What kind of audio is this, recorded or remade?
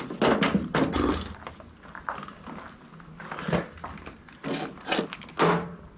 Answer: recorded